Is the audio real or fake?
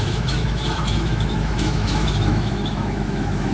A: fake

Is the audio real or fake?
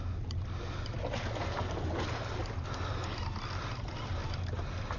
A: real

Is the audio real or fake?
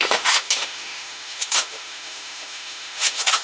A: fake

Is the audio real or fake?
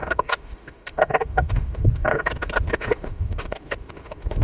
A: fake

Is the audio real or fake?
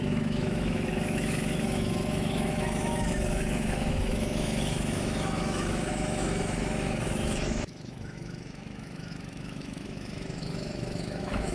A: fake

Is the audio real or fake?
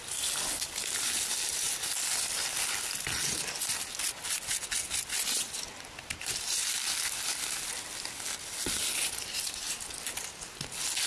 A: real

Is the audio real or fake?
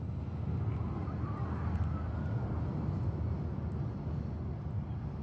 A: real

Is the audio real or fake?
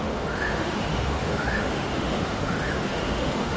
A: fake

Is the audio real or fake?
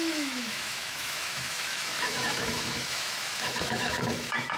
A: fake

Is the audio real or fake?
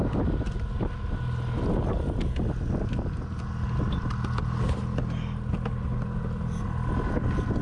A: real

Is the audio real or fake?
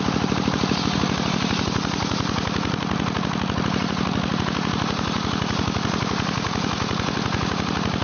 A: real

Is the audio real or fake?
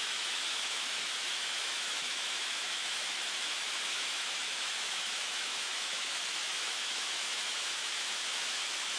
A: fake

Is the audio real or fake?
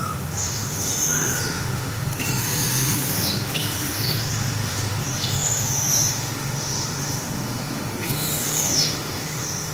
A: fake